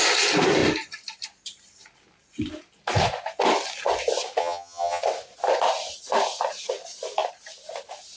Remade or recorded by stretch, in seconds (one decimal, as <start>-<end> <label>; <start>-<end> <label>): 0.0-4.4 recorded; 4.4-5.0 remade; 5.0-8.2 recorded